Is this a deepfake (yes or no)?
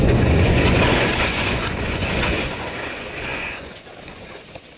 yes